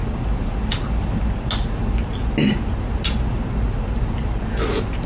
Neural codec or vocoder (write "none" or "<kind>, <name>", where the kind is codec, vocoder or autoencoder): none